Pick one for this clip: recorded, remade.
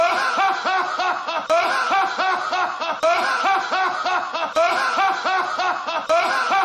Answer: recorded